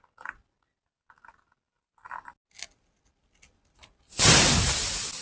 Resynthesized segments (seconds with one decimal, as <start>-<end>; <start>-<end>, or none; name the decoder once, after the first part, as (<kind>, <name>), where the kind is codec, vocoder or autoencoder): none